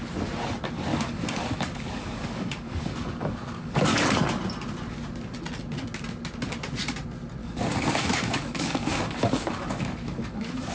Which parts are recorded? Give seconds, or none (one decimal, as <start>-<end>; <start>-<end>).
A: 0.0-0.9; 4.0-7.4